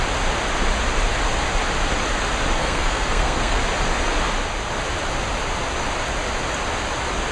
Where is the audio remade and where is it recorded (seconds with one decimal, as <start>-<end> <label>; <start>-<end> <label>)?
0.0-2.6 recorded; 2.6-3.6 remade; 3.6-7.3 recorded